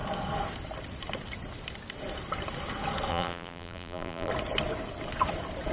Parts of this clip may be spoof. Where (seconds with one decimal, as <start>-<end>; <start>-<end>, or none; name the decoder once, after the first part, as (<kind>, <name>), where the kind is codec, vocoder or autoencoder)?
3.1-4.3 (vocoder, BigVGAN v2)

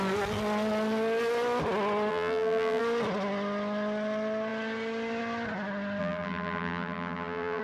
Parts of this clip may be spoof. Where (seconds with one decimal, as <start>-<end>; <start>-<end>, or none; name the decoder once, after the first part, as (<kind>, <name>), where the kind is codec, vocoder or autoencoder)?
2.1-2.8 (vocoder, BigVGAN v2); 6.0-7.6

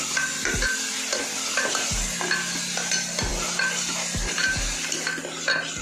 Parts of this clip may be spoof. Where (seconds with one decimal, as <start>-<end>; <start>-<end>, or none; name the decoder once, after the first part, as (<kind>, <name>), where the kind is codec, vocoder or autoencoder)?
none

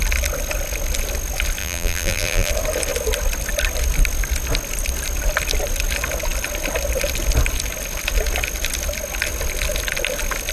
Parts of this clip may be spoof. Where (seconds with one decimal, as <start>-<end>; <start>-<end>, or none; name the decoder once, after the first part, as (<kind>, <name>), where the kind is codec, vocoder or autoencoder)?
1.6-2.5 (vocoder, BigVGAN v2)

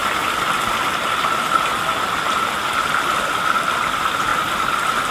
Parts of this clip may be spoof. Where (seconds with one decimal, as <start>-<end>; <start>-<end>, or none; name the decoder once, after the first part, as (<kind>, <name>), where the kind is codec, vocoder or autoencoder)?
none

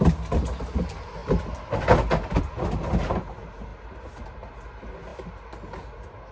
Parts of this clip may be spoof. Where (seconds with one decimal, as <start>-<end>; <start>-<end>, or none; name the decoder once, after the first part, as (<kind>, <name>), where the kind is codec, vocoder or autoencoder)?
none

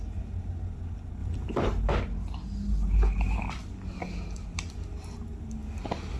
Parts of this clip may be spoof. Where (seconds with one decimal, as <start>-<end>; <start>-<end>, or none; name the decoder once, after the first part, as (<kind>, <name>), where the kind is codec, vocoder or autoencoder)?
1.2-1.9 (vocoder, BigVGAN v2); 5.6-6.2